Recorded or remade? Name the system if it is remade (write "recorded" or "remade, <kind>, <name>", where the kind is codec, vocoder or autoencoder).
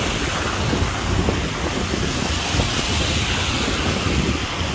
recorded